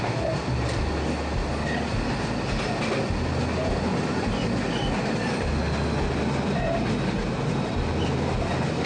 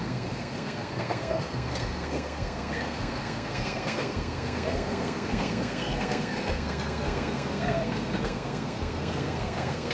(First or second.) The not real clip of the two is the second